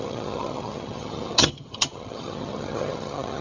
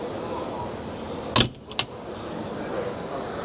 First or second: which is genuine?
second